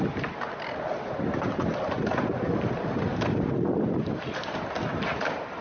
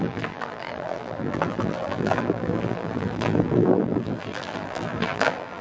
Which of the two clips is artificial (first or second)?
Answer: second